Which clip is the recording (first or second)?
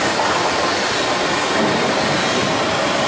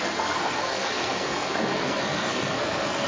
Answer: first